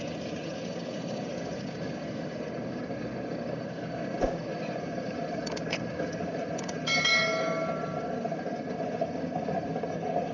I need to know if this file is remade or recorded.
remade